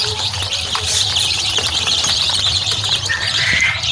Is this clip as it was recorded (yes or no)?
no